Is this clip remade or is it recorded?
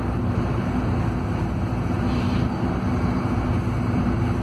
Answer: recorded